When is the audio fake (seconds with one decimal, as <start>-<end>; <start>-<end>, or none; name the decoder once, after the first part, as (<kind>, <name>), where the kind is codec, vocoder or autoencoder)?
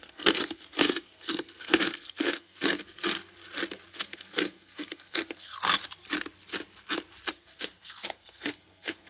0.0-3.2 (codec, SNAC); 3.9-5.5; 7.3-9.1